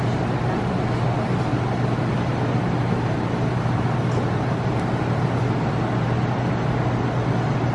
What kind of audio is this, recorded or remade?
recorded